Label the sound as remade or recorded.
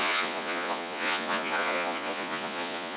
remade